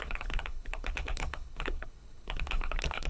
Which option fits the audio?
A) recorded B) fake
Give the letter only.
B